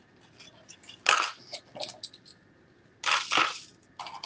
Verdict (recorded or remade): recorded